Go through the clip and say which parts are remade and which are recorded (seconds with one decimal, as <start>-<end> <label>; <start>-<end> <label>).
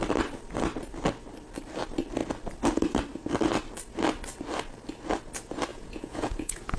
0.0-5.7 recorded; 5.7-6.8 remade